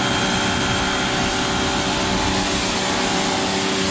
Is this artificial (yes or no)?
no